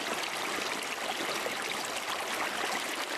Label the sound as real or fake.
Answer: real